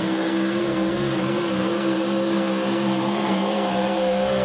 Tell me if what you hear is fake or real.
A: fake